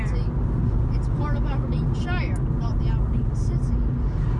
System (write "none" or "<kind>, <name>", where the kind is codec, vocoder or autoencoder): none